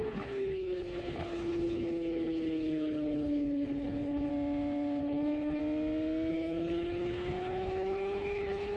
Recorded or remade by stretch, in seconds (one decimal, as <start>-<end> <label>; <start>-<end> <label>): 0.0-4.3 remade; 4.3-5.0 recorded; 5.0-5.6 remade; 5.6-6.3 recorded; 6.3-8.8 remade